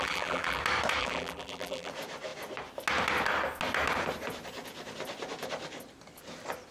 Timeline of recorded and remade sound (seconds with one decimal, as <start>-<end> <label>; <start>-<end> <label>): 0.0-0.6 remade; 0.6-1.0 recorded; 1.0-1.9 remade; 1.9-6.7 recorded